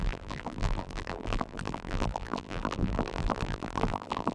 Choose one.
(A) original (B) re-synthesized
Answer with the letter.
B